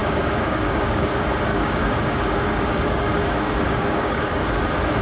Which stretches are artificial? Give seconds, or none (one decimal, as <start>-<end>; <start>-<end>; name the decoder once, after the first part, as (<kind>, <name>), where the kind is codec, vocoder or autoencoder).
0.0-1.1 (codec, DAC); 1.5-4.5

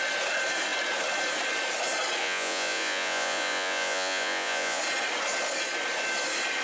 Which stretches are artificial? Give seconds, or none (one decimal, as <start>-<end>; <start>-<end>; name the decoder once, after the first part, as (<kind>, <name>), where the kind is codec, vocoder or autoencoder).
2.2-4.8 (vocoder, Vocos)

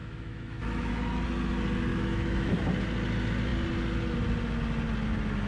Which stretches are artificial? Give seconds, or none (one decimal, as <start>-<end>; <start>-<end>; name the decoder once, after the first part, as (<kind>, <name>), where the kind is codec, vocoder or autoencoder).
0.0-0.9 (autoencoder, DAC-VAE); 1.9-2.6

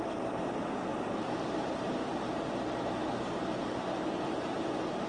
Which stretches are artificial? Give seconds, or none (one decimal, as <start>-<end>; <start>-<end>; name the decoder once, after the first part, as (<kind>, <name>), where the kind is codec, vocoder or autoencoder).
none

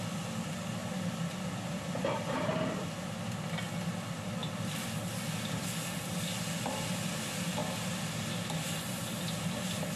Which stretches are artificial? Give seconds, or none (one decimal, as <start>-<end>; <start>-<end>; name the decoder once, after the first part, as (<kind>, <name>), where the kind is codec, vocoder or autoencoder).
0.8-2.5 (vocoder, BigVGAN v2); 7.6-8.2

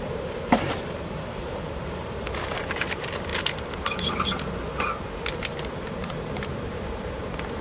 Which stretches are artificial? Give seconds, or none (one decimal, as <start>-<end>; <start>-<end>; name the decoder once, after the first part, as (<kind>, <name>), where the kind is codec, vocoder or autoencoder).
0.0-3.3 (vocoder, BigVGAN v2); 5.6-7.6

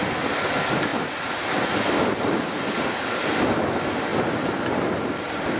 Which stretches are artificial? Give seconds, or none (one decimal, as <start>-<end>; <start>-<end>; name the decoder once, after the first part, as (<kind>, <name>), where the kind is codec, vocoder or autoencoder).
none

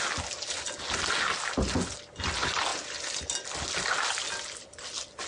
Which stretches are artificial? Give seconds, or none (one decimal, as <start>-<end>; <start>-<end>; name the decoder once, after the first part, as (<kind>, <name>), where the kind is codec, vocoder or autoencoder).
none